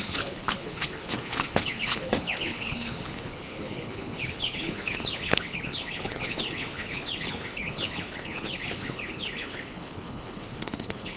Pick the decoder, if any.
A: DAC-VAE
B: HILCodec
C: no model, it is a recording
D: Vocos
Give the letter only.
B